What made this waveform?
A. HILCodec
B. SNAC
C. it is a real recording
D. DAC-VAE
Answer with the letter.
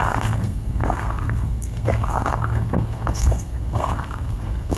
B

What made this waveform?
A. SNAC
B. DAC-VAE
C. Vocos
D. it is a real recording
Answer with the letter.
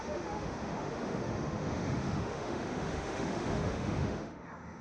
B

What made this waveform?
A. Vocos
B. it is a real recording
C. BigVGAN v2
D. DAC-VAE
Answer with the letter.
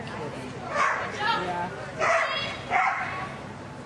B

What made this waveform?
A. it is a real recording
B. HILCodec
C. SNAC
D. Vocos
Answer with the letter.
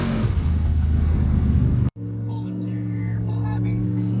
C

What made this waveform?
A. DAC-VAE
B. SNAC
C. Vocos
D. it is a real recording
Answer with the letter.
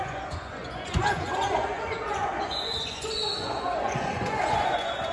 C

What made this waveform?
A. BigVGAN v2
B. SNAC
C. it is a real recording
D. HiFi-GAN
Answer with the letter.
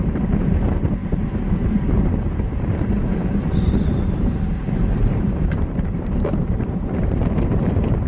A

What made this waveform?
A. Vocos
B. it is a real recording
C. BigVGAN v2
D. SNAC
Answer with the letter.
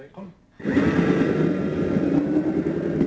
B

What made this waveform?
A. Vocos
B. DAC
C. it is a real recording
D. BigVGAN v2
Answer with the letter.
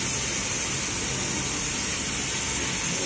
C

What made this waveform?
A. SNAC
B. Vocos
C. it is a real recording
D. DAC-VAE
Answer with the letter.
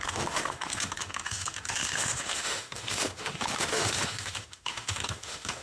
D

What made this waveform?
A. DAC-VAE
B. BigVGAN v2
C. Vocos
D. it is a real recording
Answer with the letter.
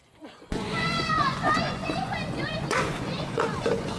C